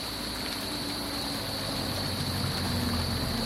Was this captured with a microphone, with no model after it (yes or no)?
yes